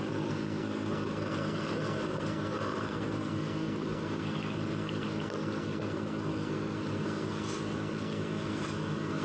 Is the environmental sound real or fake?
fake